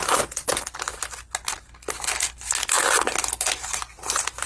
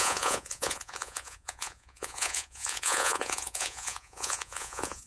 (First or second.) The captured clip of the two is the first